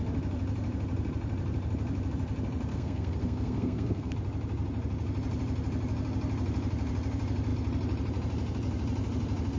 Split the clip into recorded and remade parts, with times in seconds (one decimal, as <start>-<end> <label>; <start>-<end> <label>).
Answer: 0.0-2.7 recorded; 2.7-4.1 remade; 4.1-9.6 recorded